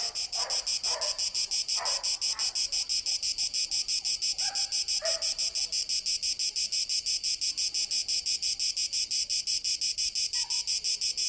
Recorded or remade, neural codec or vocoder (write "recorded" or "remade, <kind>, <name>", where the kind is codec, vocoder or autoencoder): recorded